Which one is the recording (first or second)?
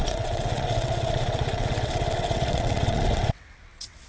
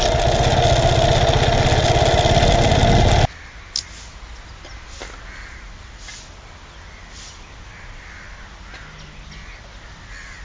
second